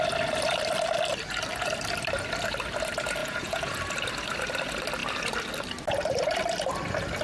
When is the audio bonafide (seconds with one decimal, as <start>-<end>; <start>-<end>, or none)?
0.0-3.2; 3.8-7.2